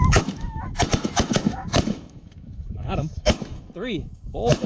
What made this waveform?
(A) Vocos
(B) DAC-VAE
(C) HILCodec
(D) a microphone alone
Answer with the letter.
B